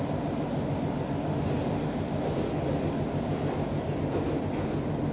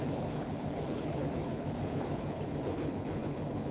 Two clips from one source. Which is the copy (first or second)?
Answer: second